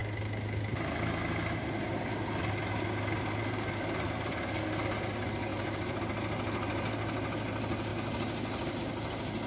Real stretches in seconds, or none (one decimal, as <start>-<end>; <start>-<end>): 0.0-5.5; 6.0-9.5